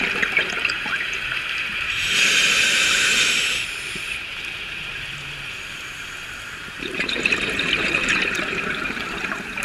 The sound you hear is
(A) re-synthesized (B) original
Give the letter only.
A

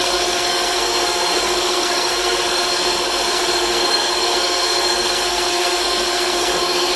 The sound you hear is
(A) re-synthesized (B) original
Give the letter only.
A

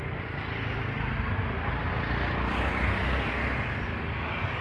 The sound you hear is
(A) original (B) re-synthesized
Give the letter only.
A